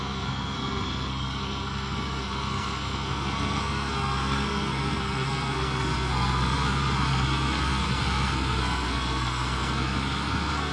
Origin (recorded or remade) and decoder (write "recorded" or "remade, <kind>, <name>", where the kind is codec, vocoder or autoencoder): remade, codec, SNAC